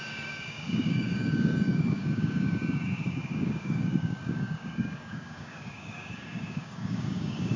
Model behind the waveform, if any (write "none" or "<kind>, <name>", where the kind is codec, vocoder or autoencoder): codec, DAC